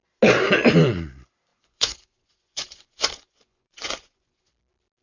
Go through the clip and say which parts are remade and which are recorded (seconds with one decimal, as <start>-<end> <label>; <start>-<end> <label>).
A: 0.0-1.5 recorded; 1.5-4.5 remade; 4.5-5.0 recorded